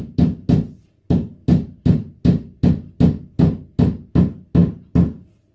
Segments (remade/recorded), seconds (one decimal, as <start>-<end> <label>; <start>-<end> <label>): 0.0-5.5 recorded